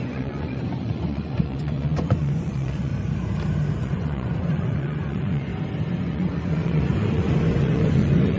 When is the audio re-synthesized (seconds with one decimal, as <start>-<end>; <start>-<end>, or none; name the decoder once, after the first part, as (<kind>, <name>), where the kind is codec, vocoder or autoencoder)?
0.0-2.9 (vocoder, Vocos); 3.8-5.5; 6.0-8.4